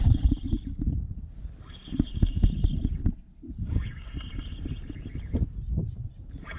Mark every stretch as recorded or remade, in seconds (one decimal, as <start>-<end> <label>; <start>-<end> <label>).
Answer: 0.0-6.6 recorded